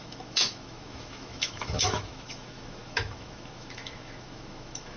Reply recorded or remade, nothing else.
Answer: remade